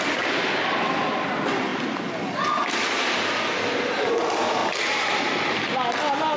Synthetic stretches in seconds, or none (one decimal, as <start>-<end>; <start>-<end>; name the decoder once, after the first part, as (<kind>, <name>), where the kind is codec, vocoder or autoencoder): none